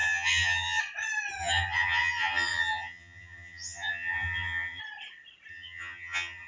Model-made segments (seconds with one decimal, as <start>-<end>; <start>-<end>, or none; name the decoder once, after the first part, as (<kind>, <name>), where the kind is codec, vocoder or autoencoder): 0.0-0.8 (vocoder, HiFi-GAN); 1.4-4.8; 5.5-6.5